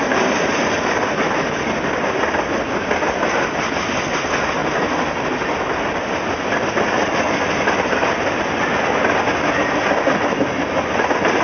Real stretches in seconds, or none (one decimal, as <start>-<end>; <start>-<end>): 0.0-11.4